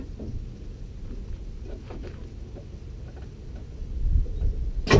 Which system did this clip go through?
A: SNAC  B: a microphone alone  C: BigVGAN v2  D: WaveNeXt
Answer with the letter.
B